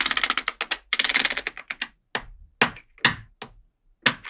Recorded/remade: recorded